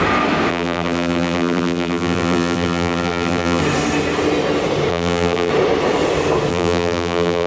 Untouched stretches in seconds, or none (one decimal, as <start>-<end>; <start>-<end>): 0.0-0.5; 3.6-4.9; 5.5-6.5